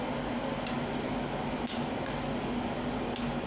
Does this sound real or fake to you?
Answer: real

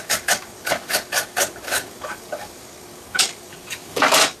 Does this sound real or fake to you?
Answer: fake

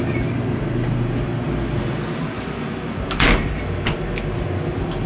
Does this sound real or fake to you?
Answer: real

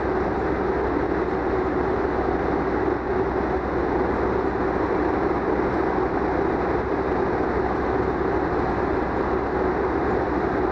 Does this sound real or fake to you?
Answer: real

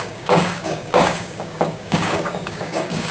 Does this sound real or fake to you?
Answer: fake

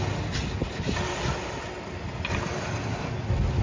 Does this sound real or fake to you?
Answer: real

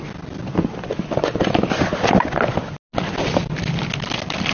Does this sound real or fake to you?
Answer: real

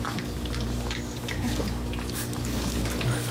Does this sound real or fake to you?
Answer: fake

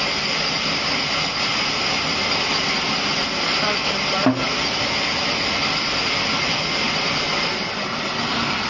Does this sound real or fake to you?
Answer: real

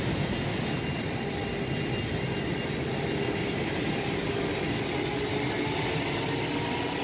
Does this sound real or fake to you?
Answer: real